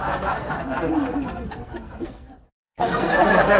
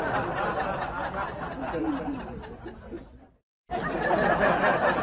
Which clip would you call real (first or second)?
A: second